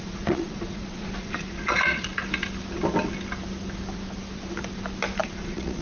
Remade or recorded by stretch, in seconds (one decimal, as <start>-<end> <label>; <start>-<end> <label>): 0.0-2.1 remade; 2.1-5.2 recorded; 5.2-5.8 remade